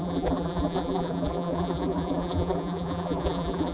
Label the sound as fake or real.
fake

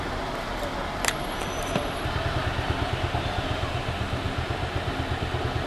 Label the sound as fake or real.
real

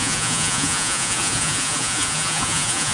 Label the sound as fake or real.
fake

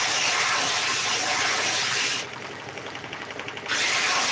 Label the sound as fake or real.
real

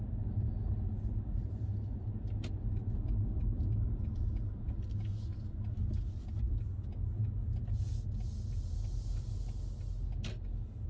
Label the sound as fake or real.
real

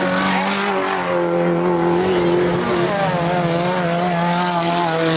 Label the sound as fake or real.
real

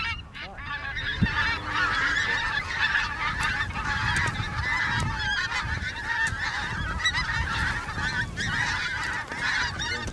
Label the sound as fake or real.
real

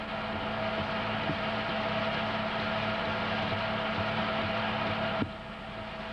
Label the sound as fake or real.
real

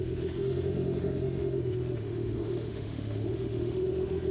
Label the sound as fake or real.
fake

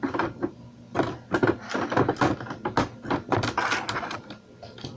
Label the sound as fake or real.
real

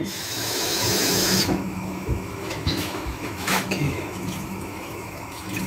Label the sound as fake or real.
fake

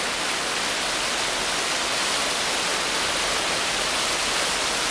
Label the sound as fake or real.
real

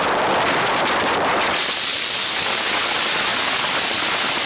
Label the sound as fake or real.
real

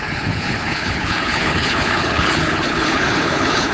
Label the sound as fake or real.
fake